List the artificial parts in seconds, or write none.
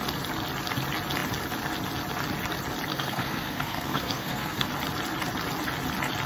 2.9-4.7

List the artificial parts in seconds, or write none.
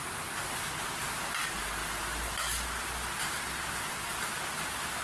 none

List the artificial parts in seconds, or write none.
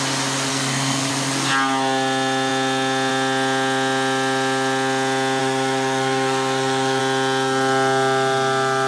0.5-1.1; 5.4-7.0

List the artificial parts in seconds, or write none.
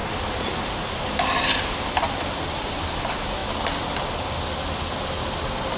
none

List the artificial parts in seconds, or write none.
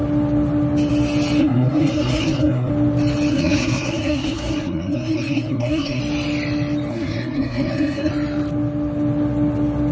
1.4-2.7; 3.3-6.0; 6.9-8.1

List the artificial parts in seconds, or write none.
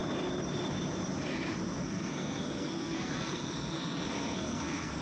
1.8-5.0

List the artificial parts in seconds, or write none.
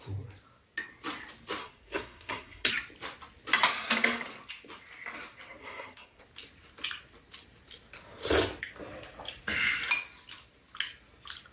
1.6-2.7; 5.6-6.2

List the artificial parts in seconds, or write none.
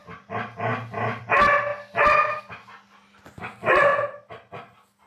none